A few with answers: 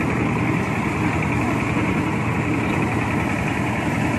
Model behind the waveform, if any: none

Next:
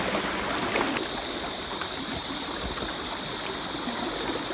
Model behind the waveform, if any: none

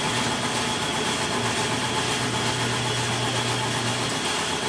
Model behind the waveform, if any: none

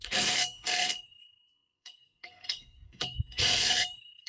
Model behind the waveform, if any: codec, SNAC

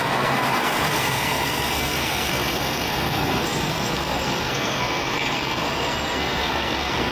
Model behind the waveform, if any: codec, SNAC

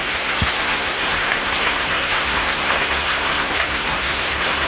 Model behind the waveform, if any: codec, SNAC